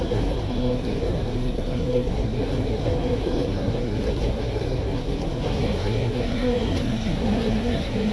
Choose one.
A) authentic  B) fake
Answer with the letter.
B